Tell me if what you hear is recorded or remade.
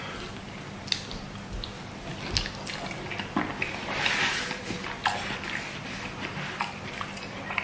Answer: recorded